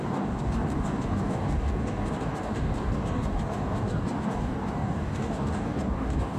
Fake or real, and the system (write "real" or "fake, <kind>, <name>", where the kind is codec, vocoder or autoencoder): fake, codec, DAC